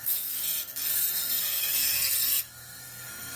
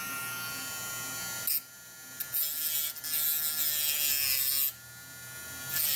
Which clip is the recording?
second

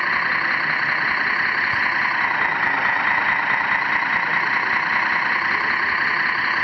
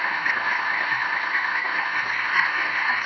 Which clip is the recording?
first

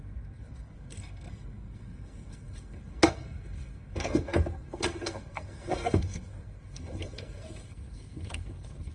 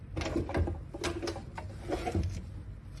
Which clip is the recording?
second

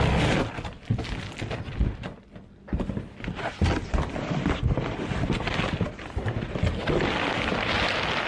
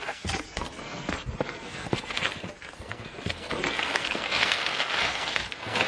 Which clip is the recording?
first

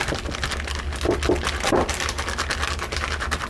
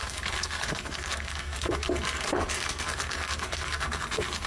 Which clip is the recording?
first